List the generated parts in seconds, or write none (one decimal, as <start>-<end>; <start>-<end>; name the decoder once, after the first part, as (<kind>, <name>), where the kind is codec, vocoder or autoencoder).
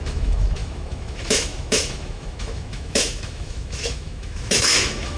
0.0-5.2 (autoencoder, DAC-VAE)